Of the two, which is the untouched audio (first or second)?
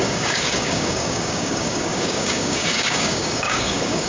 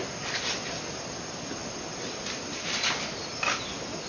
second